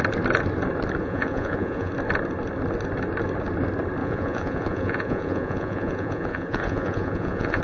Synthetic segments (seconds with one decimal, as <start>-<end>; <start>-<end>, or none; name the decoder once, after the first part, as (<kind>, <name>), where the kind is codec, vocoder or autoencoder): 1.0-1.9 (vocoder, Vocos); 4.0-7.6